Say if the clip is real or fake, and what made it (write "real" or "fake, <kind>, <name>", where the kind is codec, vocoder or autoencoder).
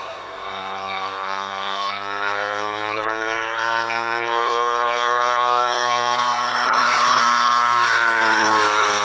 fake, codec, SNAC